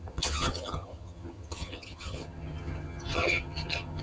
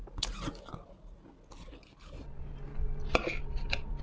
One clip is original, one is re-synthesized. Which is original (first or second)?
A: second